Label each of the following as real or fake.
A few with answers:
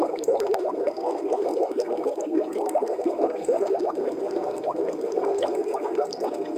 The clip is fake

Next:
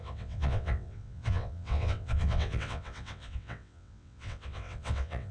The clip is fake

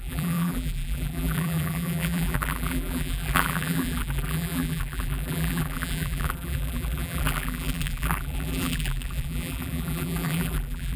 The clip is fake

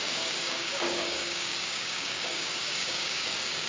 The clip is fake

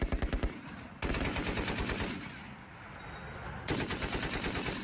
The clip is real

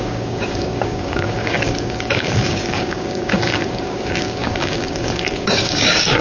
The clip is fake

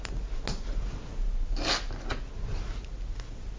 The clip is real